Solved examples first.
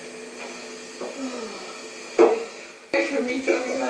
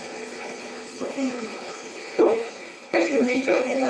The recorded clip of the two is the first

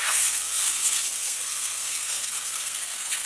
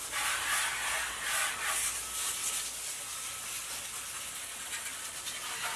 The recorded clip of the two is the second